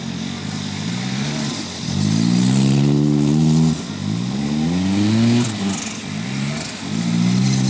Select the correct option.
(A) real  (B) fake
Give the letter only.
A